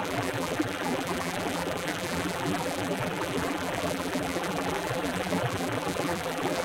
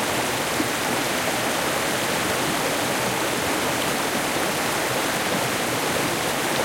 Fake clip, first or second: first